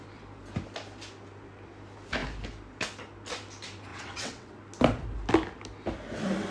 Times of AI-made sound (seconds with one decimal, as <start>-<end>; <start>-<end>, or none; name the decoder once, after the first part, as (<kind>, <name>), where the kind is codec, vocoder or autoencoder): 3.9-4.6 (vocoder, WaveNeXt)